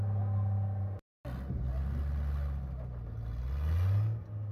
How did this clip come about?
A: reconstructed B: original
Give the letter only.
B